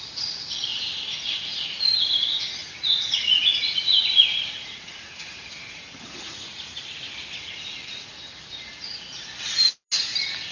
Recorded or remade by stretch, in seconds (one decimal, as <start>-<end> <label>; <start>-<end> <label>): 0.0-0.7 recorded; 0.7-2.2 remade; 2.2-2.6 recorded; 2.6-6.8 remade; 6.8-10.5 recorded